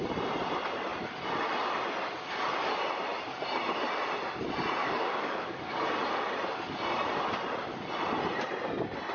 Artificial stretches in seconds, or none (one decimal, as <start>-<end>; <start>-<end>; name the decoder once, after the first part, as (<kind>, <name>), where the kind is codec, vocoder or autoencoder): 4.8-5.8 (codec, DAC)